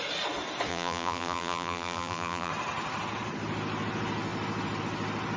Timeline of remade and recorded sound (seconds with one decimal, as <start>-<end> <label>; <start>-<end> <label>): 0.0-0.7 recorded; 0.7-2.5 remade; 2.5-5.4 recorded

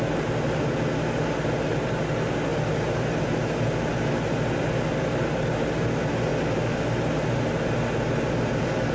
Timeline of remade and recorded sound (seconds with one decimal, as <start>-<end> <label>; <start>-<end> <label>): 0.0-8.9 recorded

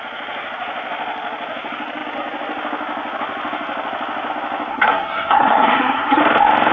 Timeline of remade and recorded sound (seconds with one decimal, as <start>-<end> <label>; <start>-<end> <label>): 0.0-4.7 recorded; 4.7-6.2 remade; 6.2-6.7 recorded

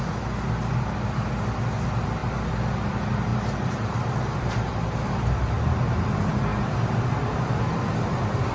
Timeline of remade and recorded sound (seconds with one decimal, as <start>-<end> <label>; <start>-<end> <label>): 0.0-3.3 recorded; 3.3-4.5 remade; 4.5-8.5 recorded

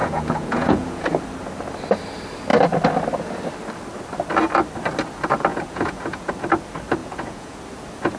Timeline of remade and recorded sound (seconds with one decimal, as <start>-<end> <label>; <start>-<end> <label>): 0.0-1.1 remade; 1.1-5.5 recorded; 5.5-6.3 remade; 6.3-7.0 recorded; 7.0-7.6 remade; 7.6-8.2 recorded

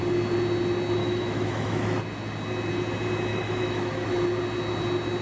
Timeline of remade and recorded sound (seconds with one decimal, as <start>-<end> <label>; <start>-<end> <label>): 0.0-1.0 recorded; 1.0-2.0 remade; 2.0-3.3 recorded; 3.3-4.1 remade; 4.1-5.2 recorded

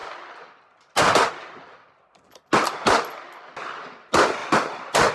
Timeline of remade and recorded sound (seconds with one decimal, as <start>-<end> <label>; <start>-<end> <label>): 0.0-4.4 recorded; 4.4-5.1 remade